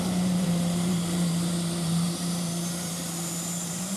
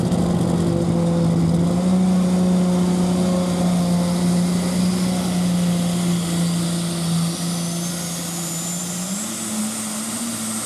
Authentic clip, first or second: second